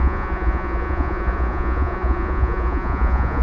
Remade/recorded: remade